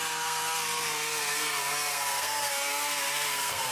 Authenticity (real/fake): fake